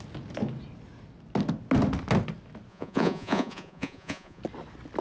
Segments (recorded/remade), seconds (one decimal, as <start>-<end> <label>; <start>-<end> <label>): 0.0-2.7 recorded; 2.7-4.4 remade; 4.4-5.0 recorded